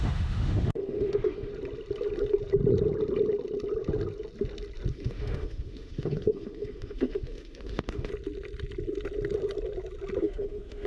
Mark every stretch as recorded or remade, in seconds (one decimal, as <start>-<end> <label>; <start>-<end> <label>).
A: 0.0-1.5 remade; 1.5-4.9 recorded; 4.9-8.1 remade; 8.1-10.2 recorded; 10.2-10.9 remade